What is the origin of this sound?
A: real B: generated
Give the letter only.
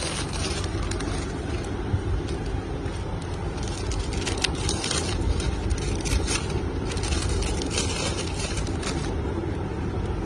A